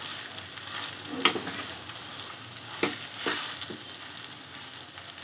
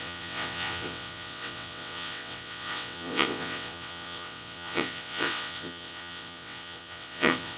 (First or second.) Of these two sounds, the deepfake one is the second